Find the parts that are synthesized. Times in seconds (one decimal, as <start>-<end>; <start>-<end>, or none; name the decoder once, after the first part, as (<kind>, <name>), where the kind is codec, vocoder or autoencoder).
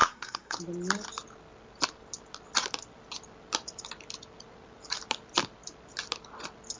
0.0-0.6 (codec, SNAC)